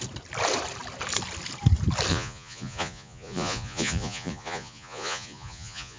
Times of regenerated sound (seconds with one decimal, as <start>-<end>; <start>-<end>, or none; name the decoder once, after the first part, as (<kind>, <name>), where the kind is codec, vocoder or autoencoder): 2.1-6.0 (vocoder, Vocos)